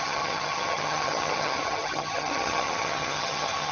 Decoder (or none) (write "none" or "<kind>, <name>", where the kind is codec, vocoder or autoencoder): vocoder, HiFi-GAN